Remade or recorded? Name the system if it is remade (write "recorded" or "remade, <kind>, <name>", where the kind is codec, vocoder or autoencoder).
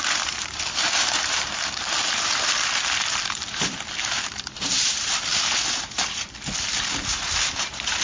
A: remade, vocoder, BigVGAN v2